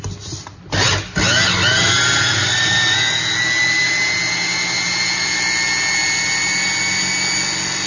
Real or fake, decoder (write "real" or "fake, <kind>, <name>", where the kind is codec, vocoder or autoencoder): real